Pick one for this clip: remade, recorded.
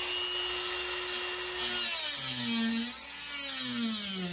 recorded